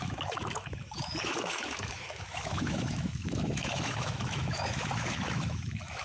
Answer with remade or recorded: remade